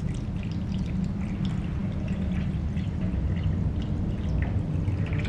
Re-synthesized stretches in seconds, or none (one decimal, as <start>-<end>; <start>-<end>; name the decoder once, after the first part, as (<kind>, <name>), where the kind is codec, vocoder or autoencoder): none